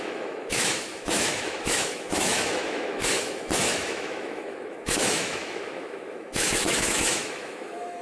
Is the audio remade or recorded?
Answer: remade